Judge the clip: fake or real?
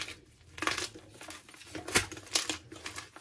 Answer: real